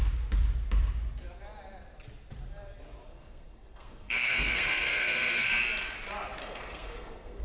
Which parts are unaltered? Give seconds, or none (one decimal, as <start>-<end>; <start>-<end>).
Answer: 0.0-3.1; 5.5-6.4

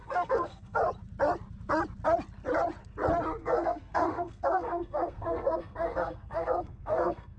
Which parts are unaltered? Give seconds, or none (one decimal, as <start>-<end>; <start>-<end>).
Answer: 0.8-3.4